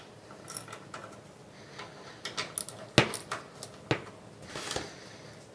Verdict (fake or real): real